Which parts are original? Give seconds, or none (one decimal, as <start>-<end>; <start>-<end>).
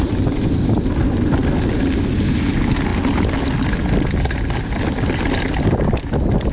0.0-6.5